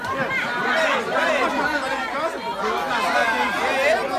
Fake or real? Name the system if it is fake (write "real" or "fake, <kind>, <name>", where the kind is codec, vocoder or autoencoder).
real